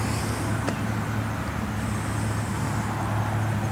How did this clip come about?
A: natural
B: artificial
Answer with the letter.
A